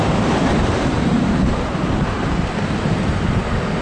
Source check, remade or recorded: remade